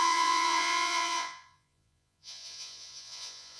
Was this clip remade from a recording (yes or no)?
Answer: yes